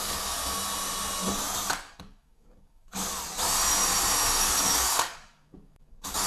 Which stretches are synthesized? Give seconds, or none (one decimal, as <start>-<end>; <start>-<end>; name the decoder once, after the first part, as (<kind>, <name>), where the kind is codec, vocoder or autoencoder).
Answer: 0.0-0.4 (codec, DAC); 1.7-2.9; 4.4-6.3